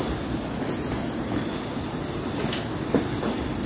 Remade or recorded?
recorded